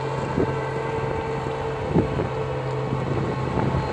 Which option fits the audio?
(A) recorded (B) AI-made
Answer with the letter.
A